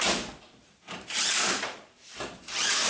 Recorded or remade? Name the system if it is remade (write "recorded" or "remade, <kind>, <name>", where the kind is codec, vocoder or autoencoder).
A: remade, vocoder, BigVGAN v2